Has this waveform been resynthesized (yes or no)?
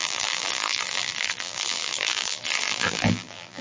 yes